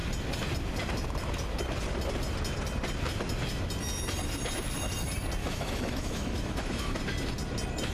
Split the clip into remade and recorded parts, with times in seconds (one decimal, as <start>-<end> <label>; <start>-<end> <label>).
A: 0.0-5.4 recorded; 5.4-7.0 remade; 7.0-7.9 recorded